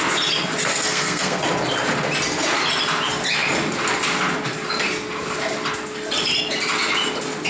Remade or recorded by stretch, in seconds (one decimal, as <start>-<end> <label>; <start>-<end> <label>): 0.0-0.7 recorded; 0.7-1.4 remade; 1.4-7.5 recorded